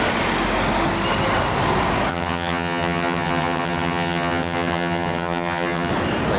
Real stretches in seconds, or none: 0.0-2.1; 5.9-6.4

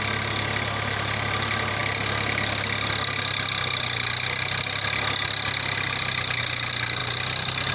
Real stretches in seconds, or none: 0.0-7.7

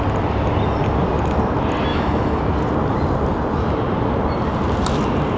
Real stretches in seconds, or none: 0.0-1.9; 2.4-5.4

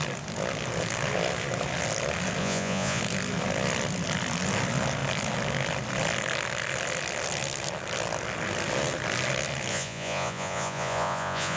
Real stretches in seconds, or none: 0.0-2.4; 3.0-9.7

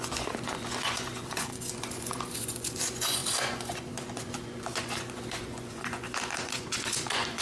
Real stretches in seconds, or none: none